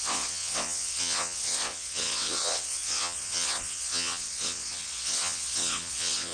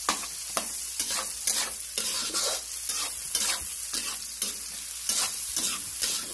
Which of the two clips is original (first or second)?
second